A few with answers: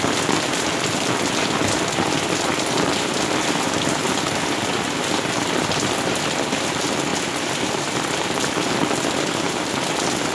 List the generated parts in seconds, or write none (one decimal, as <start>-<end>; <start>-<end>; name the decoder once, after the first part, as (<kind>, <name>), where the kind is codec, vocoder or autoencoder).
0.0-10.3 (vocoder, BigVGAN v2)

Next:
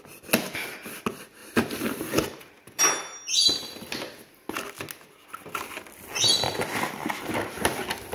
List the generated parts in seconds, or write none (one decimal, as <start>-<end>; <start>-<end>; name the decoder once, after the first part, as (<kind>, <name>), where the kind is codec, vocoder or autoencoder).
1.4-2.8 (vocoder, BigVGAN v2)

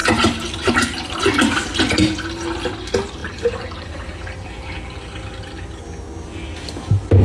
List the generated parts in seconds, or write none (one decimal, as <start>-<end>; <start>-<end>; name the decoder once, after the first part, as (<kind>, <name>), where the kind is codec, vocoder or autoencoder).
0.0-0.7 (vocoder, BigVGAN v2); 3.2-4.1

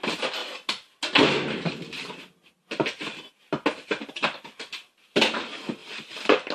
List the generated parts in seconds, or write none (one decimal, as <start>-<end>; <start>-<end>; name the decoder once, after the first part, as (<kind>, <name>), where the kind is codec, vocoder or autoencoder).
5.8-6.5 (vocoder, BigVGAN v2)

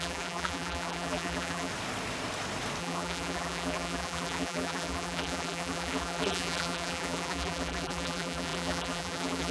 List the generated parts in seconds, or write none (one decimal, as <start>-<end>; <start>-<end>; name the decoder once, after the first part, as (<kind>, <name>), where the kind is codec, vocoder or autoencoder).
0.0-1.7 (vocoder, BigVGAN v2); 2.8-9.5